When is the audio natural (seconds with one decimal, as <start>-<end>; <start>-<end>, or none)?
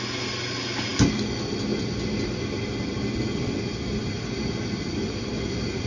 0.0-5.9